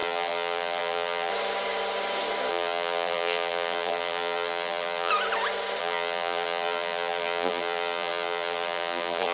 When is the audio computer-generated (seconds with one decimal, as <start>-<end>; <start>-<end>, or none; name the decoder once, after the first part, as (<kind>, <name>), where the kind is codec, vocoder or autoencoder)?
0.0-1.3 (vocoder, BigVGAN v2); 2.5-5.1; 5.8-9.3